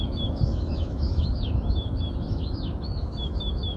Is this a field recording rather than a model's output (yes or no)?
no